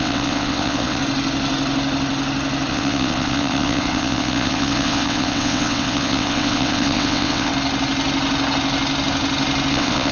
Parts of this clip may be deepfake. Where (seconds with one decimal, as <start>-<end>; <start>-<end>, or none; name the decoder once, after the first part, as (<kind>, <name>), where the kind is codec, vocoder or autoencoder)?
0.0-1.0 (vocoder, WaveNeXt); 2.7-7.5; 9.7-10.1